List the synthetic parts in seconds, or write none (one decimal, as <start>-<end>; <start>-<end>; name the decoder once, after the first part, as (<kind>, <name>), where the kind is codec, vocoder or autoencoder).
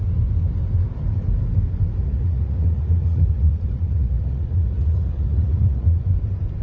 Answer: 2.0-6.0 (vocoder, Vocos)